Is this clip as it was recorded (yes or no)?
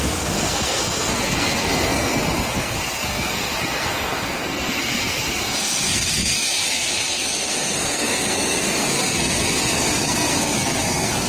no